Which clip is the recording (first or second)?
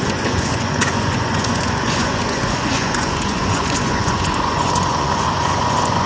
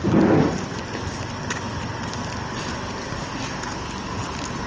second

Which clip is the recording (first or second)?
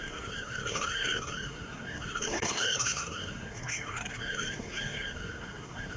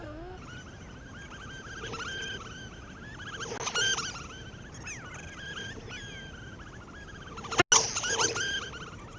second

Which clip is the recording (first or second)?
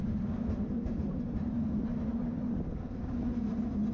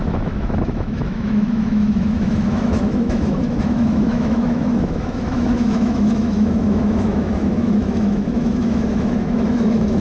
first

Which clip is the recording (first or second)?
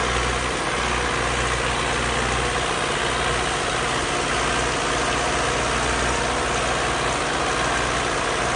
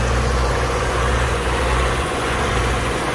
first